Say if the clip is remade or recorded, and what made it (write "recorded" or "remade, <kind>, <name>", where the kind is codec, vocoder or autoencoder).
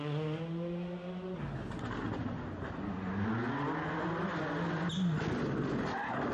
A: recorded